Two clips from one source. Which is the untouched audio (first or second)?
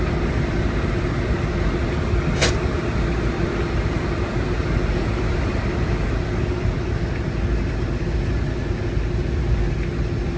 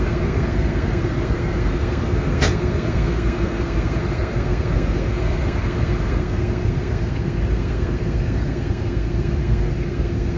first